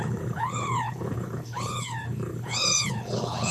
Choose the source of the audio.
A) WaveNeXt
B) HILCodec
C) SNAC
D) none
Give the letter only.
B